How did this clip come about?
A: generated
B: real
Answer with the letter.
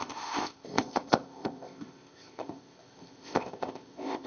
A